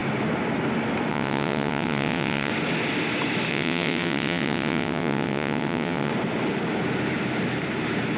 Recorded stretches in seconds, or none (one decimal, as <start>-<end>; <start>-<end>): 0.0-1.1; 2.5-3.5; 6.1-8.2